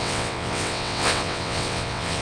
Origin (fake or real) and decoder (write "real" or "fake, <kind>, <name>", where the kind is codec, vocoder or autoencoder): fake, vocoder, WaveNeXt